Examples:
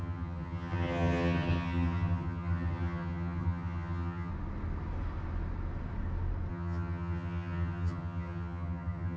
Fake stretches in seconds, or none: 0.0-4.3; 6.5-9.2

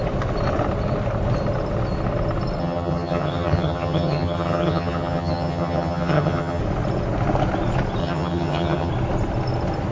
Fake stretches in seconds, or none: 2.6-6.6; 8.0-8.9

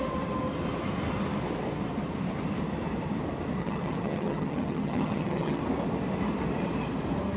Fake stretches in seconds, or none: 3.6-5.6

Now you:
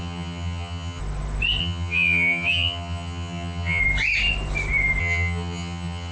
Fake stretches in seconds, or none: 0.0-1.0; 1.6-3.8; 5.0-6.1

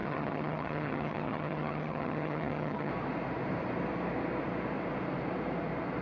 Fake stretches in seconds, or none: 0.0-2.9